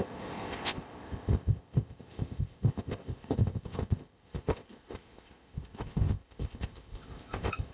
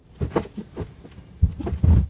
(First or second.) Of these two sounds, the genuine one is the second